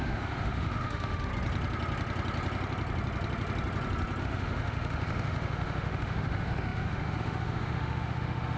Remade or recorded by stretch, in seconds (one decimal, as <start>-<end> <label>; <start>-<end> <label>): 0.0-1.3 remade; 1.3-4.2 recorded; 4.2-8.6 remade